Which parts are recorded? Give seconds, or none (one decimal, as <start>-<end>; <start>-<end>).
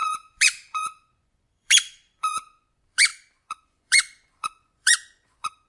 none